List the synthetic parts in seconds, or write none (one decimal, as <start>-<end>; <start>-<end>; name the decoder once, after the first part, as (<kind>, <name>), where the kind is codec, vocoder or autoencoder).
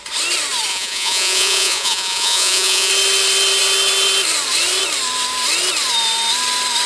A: 0.7-2.9 (vocoder, Vocos)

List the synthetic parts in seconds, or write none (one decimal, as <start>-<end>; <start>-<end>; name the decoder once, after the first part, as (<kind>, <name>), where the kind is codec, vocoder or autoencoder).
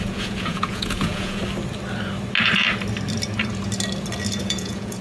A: 0.0-1.4 (vocoder, Vocos); 4.4-5.0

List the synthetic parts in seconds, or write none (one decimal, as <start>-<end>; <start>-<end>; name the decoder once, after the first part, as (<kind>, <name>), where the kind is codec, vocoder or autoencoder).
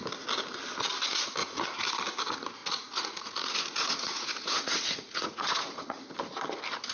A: 1.4-1.9 (vocoder, Vocos); 2.6-6.0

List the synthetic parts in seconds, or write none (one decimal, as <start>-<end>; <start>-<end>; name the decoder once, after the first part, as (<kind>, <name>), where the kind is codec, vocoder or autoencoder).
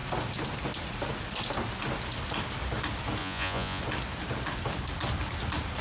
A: 3.2-3.8 (vocoder, Vocos)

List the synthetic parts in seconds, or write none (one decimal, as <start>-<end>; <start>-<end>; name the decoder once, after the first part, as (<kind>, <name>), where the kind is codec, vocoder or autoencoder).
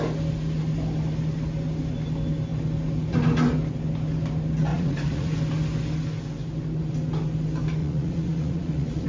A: 4.7-5.3 (vocoder, Vocos); 7.8-9.1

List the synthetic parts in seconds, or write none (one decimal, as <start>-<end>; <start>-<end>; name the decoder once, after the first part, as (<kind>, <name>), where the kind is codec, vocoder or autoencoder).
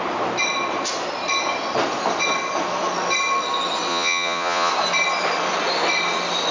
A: 3.9-4.7 (vocoder, Vocos)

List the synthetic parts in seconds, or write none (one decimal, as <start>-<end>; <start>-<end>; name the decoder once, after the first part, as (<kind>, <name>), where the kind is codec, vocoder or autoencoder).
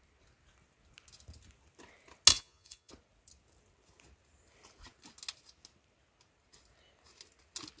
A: 2.3-2.9 (vocoder, Vocos)